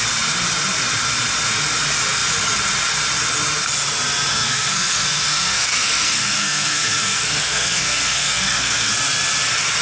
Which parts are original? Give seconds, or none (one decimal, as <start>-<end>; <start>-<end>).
0.0-4.3; 8.9-9.8